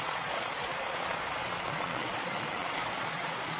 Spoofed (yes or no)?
yes